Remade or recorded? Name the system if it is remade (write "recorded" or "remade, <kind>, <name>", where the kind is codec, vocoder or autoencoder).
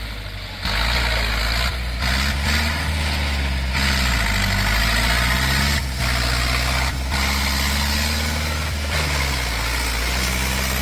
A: recorded